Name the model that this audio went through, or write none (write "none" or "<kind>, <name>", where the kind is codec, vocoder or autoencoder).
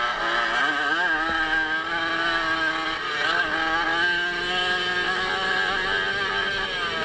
none